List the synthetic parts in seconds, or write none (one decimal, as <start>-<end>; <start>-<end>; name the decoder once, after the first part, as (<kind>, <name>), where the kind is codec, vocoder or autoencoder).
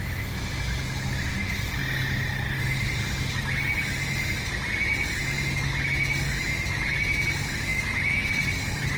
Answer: 7.7-8.3 (autoencoder, DAC-VAE)